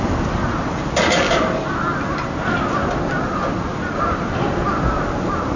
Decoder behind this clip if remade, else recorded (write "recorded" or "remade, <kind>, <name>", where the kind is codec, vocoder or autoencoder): recorded